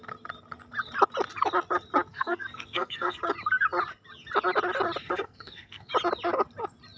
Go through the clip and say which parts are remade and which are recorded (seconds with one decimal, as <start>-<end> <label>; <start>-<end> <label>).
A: 0.0-2.1 recorded; 2.1-3.2 remade; 3.2-5.0 recorded; 5.0-5.9 remade; 5.9-7.0 recorded